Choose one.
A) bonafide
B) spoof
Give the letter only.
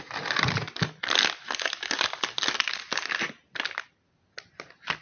A